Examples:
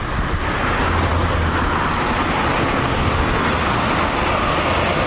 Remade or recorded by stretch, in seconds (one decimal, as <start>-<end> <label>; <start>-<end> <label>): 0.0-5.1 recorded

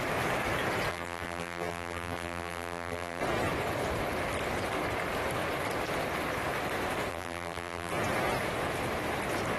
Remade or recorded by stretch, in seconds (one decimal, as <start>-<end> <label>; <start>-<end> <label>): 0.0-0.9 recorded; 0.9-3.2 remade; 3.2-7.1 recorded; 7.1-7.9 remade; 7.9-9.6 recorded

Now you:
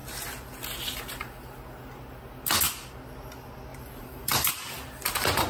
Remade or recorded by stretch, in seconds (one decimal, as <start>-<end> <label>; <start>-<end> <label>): 0.0-3.7 recorded; 3.7-4.5 remade; 4.5-5.5 recorded

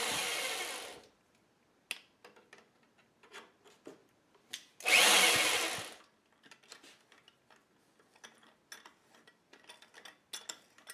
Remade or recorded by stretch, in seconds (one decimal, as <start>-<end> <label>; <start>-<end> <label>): 0.0-10.9 recorded

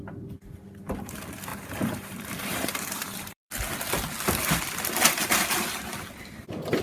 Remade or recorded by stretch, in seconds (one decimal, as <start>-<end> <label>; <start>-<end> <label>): 0.0-1.5 recorded; 1.5-3.5 remade; 3.5-6.8 recorded

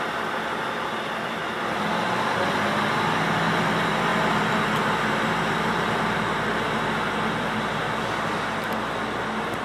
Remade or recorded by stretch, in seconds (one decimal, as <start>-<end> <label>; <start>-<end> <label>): 0.0-9.6 recorded

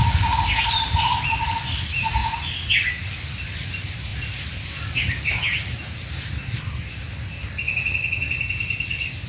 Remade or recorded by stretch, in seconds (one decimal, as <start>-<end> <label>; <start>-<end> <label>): 0.0-4.1 recorded; 4.1-5.3 remade; 5.3-9.3 recorded